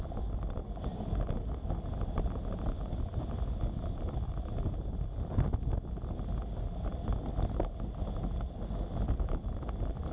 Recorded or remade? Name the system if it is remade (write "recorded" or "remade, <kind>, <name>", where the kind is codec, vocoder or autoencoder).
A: recorded